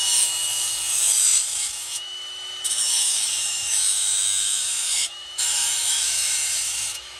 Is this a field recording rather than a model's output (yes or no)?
no